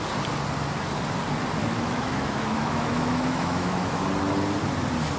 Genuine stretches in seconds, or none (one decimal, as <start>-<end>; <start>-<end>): 0.0-1.6; 4.0-5.2

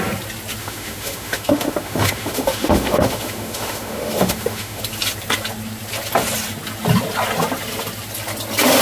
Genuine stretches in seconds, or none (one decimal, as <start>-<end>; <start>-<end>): 0.0-0.6; 4.8-8.8